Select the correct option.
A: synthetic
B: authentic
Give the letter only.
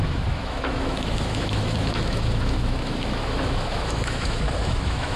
A